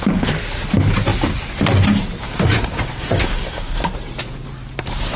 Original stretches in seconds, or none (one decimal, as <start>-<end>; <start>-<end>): 0.0-1.1; 2.0-3.4